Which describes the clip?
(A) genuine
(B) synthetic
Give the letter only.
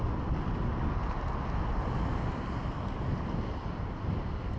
A